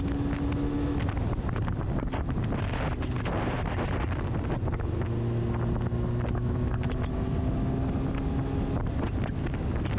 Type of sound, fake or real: real